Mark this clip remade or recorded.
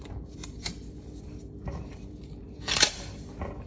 remade